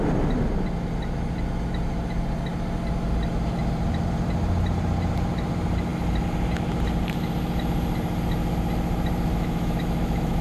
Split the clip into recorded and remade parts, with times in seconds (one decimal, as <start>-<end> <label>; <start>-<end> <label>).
0.0-9.3 recorded; 9.3-10.4 remade